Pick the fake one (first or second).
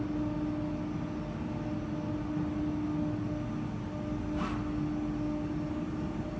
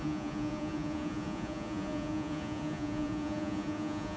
second